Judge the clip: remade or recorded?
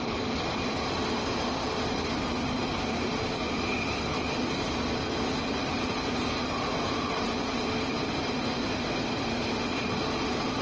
recorded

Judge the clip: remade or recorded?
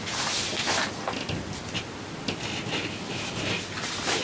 recorded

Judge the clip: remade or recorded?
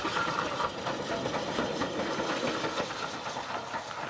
recorded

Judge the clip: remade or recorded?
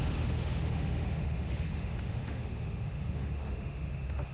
remade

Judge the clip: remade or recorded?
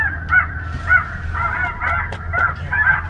recorded